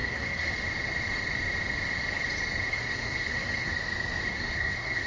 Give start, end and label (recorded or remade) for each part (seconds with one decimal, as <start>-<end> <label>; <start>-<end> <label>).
0.0-0.5 remade; 0.5-2.7 recorded; 2.7-3.7 remade; 3.7-4.3 recorded; 4.3-5.1 remade